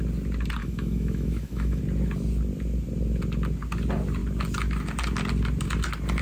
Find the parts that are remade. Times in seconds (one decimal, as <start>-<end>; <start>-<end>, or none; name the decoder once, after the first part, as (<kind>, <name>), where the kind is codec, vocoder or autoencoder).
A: 0.6-1.8 (autoencoder, DAC-VAE)